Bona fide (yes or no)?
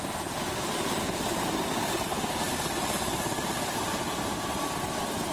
no